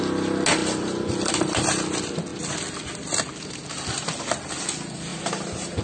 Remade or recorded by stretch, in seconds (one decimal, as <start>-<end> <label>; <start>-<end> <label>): 0.0-5.1 recorded; 5.1-5.8 remade